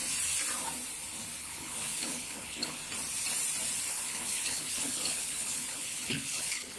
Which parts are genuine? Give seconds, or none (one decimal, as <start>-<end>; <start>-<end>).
0.0-1.4; 2.8-3.9